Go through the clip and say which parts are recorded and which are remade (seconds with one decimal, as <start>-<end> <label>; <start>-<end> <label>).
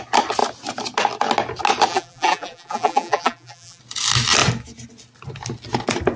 0.0-1.9 recorded; 1.9-3.8 remade; 3.8-6.2 recorded